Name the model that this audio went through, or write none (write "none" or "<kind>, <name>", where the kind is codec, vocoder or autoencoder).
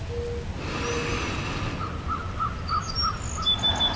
none